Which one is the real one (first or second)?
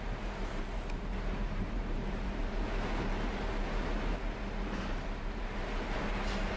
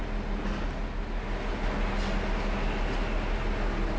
second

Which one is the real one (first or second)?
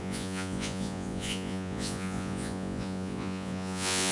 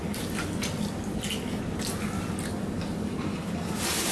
second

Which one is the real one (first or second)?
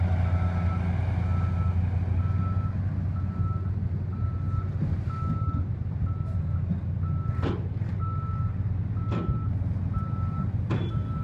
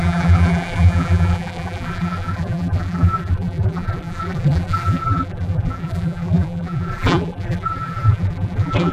first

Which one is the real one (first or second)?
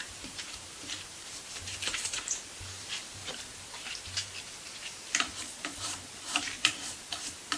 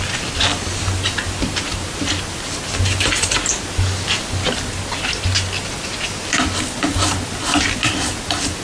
second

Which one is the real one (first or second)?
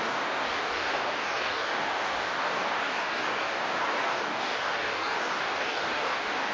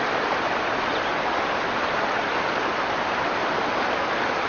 second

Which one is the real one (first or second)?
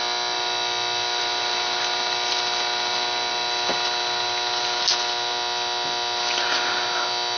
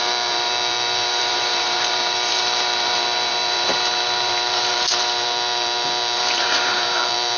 first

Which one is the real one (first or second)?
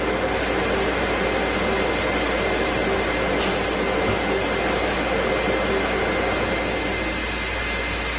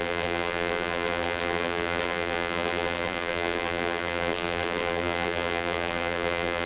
first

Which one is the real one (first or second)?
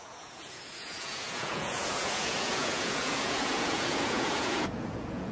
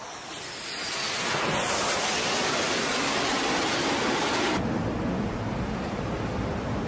second